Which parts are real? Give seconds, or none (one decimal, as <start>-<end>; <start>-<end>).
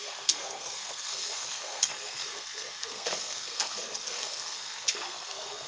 none